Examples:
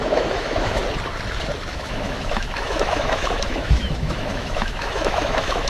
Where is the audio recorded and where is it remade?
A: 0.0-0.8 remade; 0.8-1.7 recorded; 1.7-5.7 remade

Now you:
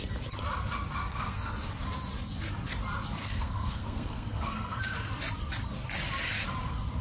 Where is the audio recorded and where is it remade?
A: 0.0-1.0 recorded; 1.0-1.7 remade; 1.7-3.2 recorded; 3.2-4.8 remade; 4.8-7.0 recorded

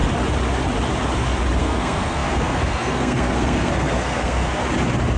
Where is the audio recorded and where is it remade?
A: 0.0-1.6 recorded; 1.6-4.6 remade; 4.6-5.2 recorded

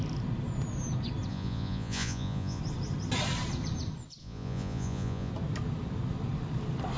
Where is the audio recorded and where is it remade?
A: 0.0-1.3 recorded; 1.3-2.6 remade; 2.6-4.2 recorded; 4.2-5.3 remade; 5.3-7.0 recorded

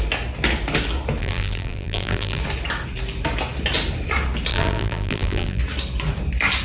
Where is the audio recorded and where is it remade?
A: 0.0-1.2 recorded; 1.2-2.4 remade; 2.4-4.5 recorded; 4.5-5.6 remade; 5.6-6.6 recorded

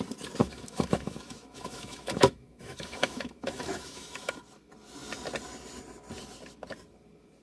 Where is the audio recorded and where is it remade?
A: 0.0-0.4 recorded; 0.4-4.4 remade; 4.4-7.4 recorded

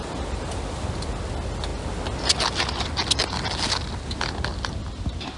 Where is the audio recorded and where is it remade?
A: 0.0-5.4 recorded